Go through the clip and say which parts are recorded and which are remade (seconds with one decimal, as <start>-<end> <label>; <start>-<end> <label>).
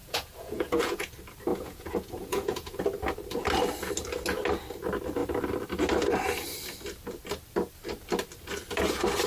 0.0-1.1 remade; 1.1-1.5 recorded; 1.5-2.8 remade; 2.8-9.3 recorded